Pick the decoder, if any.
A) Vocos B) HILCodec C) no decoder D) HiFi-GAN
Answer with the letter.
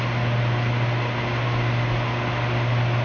C